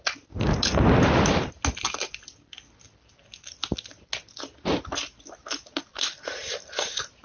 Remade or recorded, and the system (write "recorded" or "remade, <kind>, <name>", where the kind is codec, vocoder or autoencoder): recorded